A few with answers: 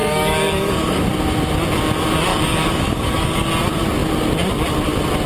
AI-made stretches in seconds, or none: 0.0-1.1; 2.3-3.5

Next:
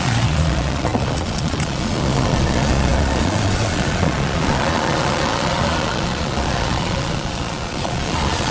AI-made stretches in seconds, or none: 0.0-8.5